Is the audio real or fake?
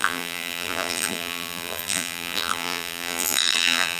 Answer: fake